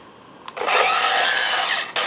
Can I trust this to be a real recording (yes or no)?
yes